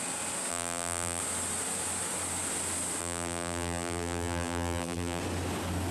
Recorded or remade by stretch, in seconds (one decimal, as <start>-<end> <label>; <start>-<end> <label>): 0.0-0.5 recorded; 0.5-1.2 remade; 1.2-3.0 recorded; 3.0-5.2 remade; 5.2-5.9 recorded